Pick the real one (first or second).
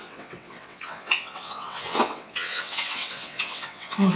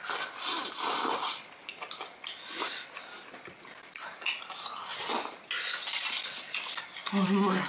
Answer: second